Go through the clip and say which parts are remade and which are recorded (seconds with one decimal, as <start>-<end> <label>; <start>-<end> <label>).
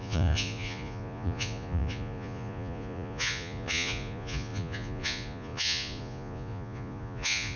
0.0-7.6 remade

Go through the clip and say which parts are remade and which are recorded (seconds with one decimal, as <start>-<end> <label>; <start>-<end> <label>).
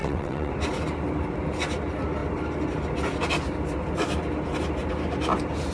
0.0-0.5 remade; 0.5-5.7 recorded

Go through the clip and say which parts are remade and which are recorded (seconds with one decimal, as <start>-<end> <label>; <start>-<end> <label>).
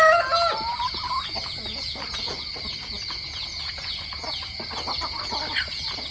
0.0-6.1 recorded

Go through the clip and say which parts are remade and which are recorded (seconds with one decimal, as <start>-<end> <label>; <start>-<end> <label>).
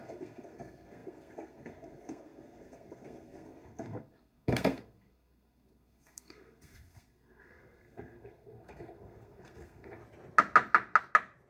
0.0-10.0 remade; 10.0-11.5 recorded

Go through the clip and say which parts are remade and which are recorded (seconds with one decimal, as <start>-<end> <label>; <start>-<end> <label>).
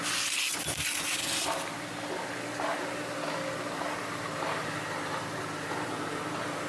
0.0-6.7 recorded